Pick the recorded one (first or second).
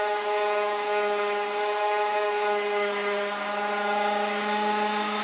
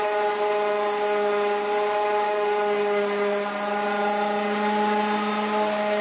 second